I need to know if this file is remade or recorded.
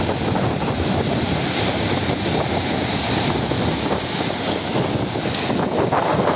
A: recorded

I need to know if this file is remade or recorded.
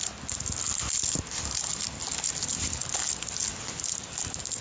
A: recorded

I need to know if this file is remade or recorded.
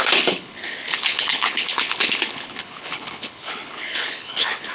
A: remade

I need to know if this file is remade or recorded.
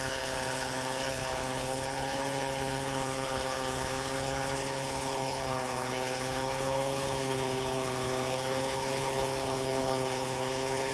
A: remade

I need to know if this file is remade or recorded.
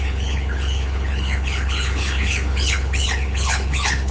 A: remade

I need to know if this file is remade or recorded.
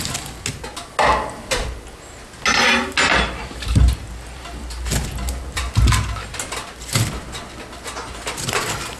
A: recorded